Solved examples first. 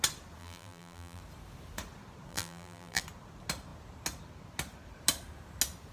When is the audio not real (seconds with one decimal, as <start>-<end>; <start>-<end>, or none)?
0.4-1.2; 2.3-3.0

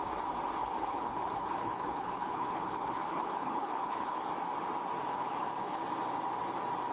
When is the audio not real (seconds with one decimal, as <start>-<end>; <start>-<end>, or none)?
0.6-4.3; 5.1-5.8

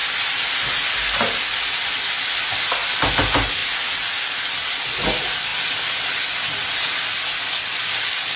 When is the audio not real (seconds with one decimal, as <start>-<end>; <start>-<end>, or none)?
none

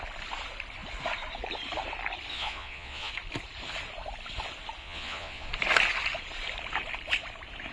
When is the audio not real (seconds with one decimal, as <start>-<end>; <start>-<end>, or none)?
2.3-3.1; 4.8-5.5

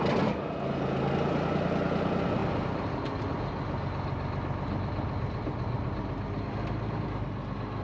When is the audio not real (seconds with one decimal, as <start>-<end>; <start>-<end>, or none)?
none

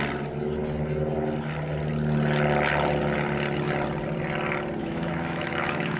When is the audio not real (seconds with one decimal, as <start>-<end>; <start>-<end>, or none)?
4.8-6.0

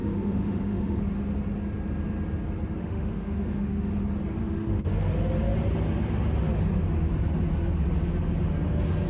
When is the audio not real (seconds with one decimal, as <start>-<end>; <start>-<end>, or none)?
0.0-1.0; 2.8-3.9; 4.4-4.9